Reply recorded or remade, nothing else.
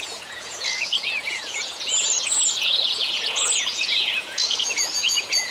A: remade